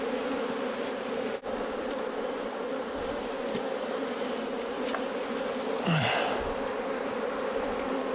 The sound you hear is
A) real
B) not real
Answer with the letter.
A